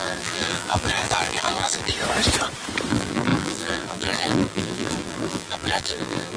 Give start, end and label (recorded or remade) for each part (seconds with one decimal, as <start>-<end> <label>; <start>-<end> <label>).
0.0-1.9 remade; 1.9-2.9 recorded; 2.9-6.4 remade